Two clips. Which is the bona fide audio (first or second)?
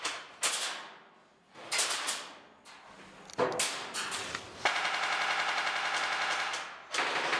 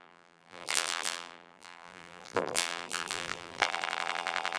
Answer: first